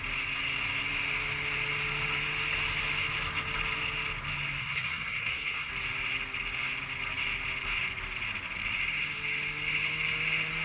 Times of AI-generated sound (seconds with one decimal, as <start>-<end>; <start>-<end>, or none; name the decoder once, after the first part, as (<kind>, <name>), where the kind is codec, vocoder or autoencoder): 4.6-5.7 (codec, SNAC)